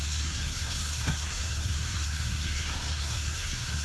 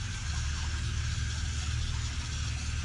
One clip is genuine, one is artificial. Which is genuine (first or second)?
second